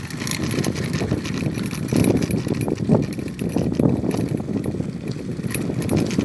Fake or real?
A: real